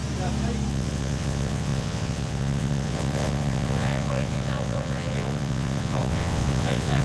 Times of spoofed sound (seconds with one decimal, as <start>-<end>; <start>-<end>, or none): 0.7-7.0